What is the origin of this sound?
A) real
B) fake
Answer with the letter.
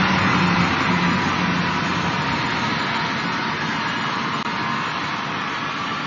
A